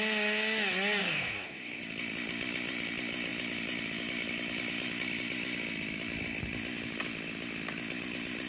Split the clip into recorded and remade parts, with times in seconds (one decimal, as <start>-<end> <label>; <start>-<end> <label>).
0.0-1.0 recorded; 1.0-1.8 remade; 1.8-8.5 recorded